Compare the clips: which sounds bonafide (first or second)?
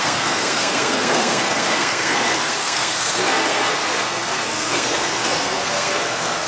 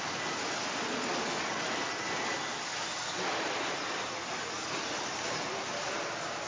second